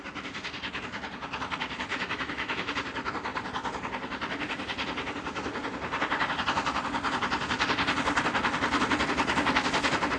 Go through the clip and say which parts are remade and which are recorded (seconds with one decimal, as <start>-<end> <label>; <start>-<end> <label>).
0.0-1.9 recorded; 1.9-2.7 remade; 2.7-10.2 recorded